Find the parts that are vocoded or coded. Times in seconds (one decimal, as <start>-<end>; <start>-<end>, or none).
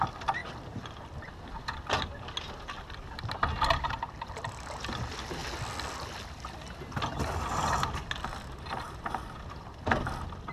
none